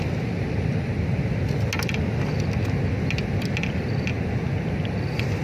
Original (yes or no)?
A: yes